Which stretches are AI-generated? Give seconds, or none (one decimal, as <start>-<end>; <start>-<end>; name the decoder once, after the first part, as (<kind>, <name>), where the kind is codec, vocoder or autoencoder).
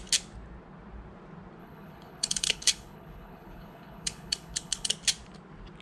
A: 1.6-4.9 (codec, HILCodec)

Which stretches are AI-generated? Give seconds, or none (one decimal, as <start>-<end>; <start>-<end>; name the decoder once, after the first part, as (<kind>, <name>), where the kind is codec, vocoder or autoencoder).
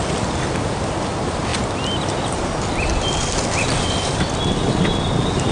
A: none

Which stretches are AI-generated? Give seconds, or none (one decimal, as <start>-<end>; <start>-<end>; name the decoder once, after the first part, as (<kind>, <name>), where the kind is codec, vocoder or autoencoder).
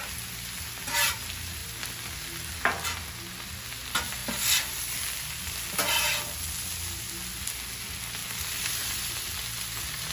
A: 8.2-9.1 (vocoder, BigVGAN v2)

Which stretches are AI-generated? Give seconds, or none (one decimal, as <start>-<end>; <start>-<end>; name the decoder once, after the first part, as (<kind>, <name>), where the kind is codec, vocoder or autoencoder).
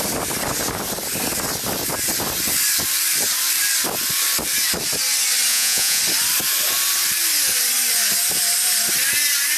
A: 5.5-6.0 (vocoder, Vocos)